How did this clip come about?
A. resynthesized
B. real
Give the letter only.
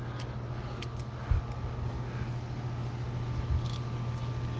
B